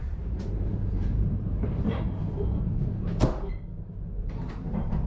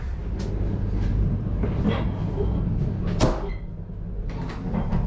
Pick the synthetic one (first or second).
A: first